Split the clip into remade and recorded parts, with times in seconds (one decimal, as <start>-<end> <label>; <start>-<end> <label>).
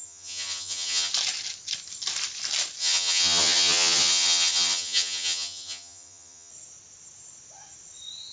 0.0-1.1 remade; 1.1-2.8 recorded; 2.8-6.5 remade; 6.5-8.3 recorded